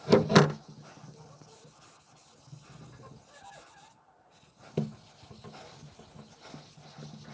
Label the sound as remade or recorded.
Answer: recorded